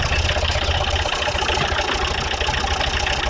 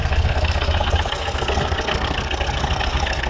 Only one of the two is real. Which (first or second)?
first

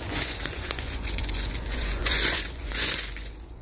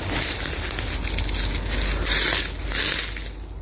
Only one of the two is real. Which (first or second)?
second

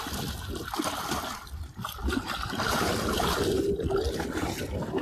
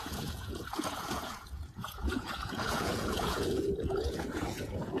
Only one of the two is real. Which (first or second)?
first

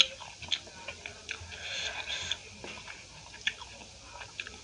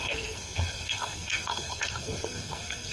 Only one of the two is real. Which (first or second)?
first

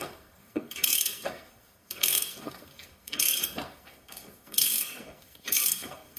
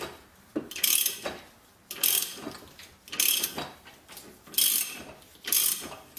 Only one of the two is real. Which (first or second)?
second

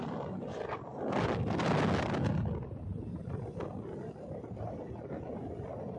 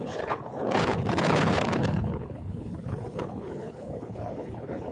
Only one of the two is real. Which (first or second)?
first